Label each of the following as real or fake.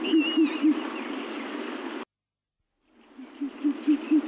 real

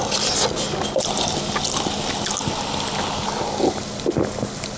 real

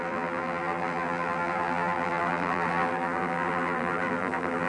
fake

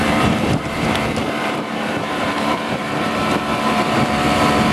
fake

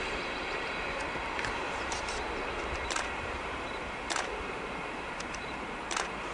fake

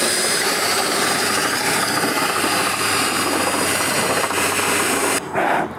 fake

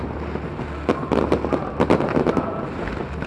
real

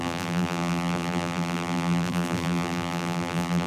fake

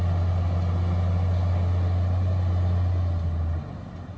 real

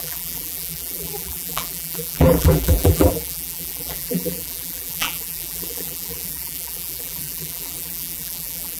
fake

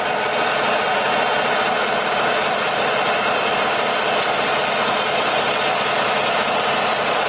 real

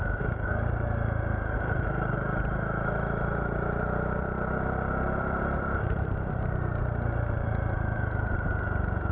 fake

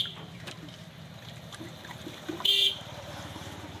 fake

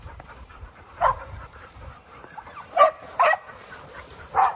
fake